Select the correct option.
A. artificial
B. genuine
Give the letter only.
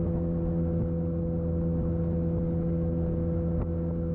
B